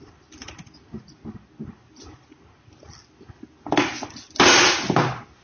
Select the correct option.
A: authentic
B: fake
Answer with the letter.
A